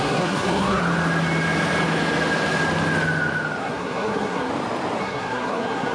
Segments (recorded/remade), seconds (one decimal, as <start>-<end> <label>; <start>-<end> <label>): 0.0-0.8 remade; 0.8-3.6 recorded; 3.6-4.5 remade; 4.5-5.0 recorded; 5.0-5.9 remade